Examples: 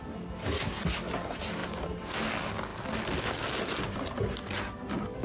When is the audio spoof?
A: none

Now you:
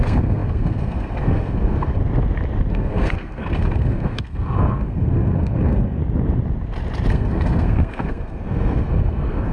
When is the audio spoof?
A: 0.0-2.0; 2.7-6.0; 7.1-9.5

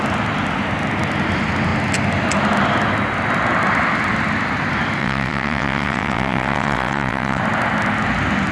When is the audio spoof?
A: 5.0-7.4

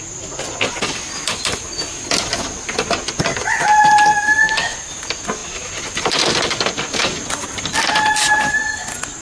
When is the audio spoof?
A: none